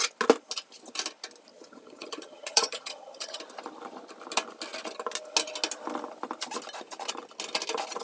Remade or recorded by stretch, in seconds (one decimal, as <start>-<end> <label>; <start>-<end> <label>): 0.0-1.5 recorded; 1.5-3.4 remade; 3.4-8.0 recorded

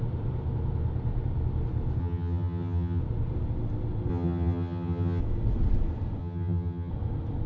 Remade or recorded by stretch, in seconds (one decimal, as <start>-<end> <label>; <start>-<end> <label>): 0.0-2.0 recorded; 2.0-3.0 remade; 3.0-4.1 recorded; 4.1-5.2 remade; 5.2-6.2 recorded; 6.2-6.9 remade; 6.9-7.5 recorded

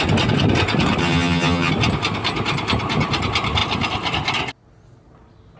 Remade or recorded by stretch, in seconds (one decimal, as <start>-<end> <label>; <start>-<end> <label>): 0.0-1.0 recorded; 1.0-1.7 remade; 1.7-5.6 recorded

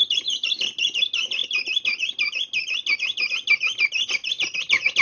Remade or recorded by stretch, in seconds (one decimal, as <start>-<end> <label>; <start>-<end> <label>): 0.0-5.0 recorded

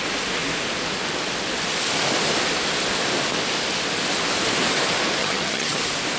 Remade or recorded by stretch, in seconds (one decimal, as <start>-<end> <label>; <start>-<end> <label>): 0.0-5.2 recorded; 5.2-5.8 remade; 5.8-6.2 recorded

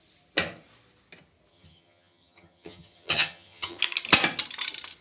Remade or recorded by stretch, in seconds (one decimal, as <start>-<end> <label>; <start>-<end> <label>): 0.0-1.5 recorded; 1.5-3.8 remade; 3.8-5.0 recorded

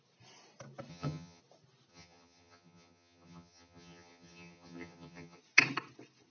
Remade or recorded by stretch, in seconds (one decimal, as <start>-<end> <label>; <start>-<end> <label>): 0.0-0.9 recorded; 0.9-1.4 remade; 1.4-1.9 recorded; 1.9-5.4 remade; 5.4-6.3 recorded